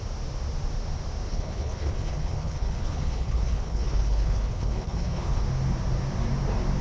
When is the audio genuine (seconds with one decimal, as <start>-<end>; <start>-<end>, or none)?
0.0-1.3; 5.4-6.8